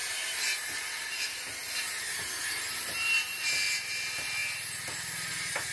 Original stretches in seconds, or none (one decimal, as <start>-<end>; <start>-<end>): 3.4-5.7